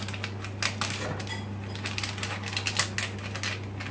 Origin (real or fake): real